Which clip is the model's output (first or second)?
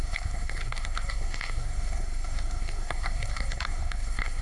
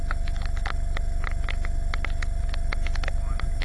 first